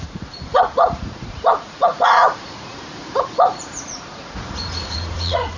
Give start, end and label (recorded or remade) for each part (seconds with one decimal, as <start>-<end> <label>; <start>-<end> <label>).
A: 0.0-5.6 remade